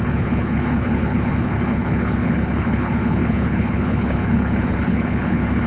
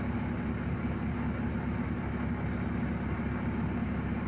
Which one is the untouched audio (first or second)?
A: second